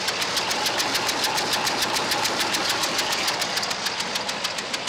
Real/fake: real